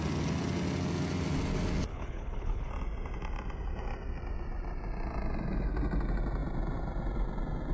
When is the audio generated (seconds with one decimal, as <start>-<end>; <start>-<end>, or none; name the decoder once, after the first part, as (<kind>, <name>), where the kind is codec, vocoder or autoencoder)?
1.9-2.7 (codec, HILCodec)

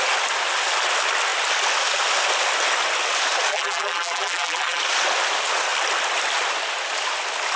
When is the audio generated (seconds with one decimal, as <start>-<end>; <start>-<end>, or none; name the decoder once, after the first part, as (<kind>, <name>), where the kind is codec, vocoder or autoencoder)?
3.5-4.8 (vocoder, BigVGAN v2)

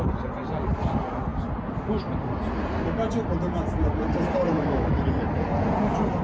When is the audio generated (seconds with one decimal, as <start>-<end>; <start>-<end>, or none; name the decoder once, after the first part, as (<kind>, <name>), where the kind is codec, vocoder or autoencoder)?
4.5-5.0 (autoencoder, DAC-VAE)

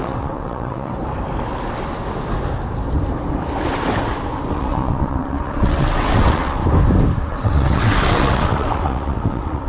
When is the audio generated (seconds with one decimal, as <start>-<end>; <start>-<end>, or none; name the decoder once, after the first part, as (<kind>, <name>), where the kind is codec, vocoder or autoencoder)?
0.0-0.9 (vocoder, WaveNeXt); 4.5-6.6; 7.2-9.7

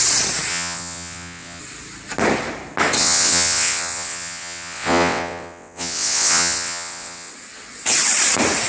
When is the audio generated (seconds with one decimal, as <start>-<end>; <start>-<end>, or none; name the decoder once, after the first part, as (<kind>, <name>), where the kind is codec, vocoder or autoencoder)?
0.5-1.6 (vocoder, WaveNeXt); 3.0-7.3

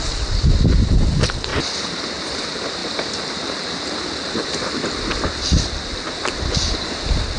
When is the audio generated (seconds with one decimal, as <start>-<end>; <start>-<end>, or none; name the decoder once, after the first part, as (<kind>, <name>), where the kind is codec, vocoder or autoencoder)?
none

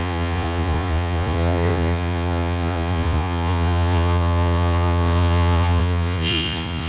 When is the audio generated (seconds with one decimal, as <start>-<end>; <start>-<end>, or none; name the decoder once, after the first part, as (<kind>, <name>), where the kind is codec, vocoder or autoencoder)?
0.0-6.9 (vocoder, Vocos)

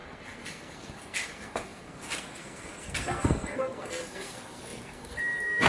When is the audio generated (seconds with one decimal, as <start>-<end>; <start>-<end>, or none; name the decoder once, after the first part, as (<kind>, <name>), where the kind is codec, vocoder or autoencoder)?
0.0-5.7 (codec, SNAC)